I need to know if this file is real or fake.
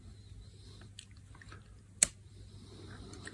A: real